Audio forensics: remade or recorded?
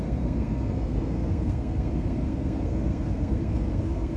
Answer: remade